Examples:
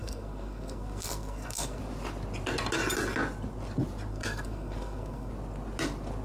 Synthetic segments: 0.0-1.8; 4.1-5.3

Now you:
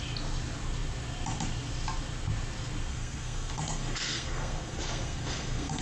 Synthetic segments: 2.9-5.8

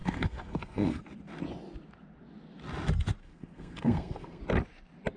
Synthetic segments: 0.0-1.0; 3.2-4.4

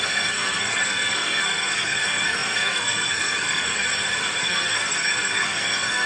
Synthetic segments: 0.0-3.9; 4.4-6.1